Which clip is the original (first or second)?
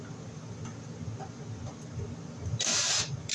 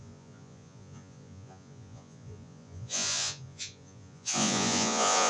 first